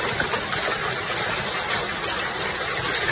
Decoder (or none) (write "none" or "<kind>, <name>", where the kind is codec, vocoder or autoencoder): none